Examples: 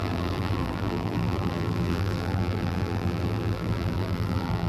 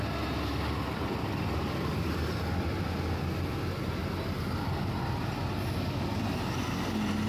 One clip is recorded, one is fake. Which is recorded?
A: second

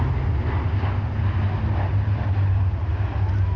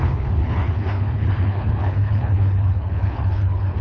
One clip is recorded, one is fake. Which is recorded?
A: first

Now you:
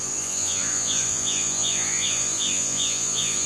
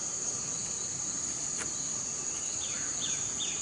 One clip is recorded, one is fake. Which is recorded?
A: second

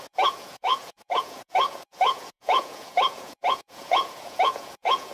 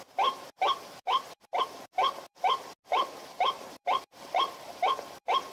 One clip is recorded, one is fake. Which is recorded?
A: second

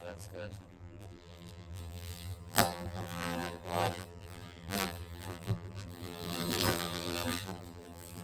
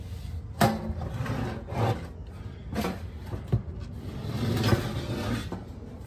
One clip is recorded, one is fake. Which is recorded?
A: second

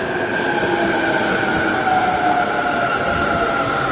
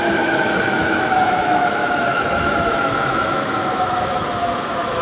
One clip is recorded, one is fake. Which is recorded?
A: first